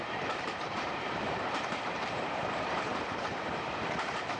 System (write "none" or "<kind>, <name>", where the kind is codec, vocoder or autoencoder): vocoder, BigVGAN v2